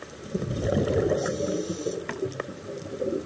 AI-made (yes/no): no